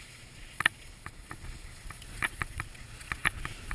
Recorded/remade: remade